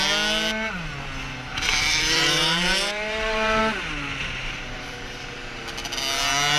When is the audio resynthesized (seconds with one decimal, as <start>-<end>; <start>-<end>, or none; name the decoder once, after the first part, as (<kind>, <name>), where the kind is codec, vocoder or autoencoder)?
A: 1.5-3.6 (vocoder, BigVGAN v2); 4.2-5.6